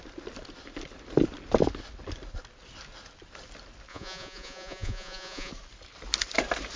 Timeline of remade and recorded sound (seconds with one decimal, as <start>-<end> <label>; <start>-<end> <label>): 0.0-3.9 recorded; 3.9-5.5 remade; 5.5-6.8 recorded